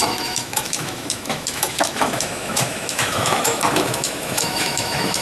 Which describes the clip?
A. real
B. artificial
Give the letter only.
B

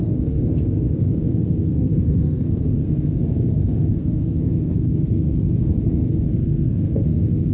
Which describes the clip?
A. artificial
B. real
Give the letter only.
A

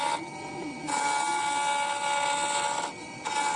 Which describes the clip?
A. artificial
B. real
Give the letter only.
B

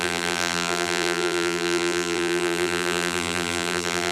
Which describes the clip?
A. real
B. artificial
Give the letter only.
B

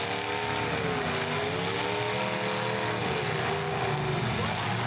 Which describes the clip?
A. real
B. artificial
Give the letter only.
A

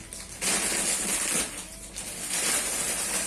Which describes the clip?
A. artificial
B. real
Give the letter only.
B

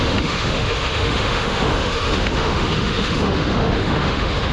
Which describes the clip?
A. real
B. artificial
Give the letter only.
B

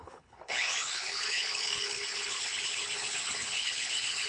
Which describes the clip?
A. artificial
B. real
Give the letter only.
A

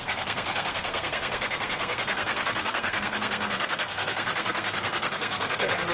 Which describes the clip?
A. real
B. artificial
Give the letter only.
B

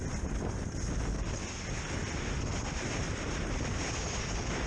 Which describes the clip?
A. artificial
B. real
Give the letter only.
B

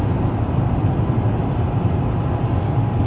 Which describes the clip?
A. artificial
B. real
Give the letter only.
B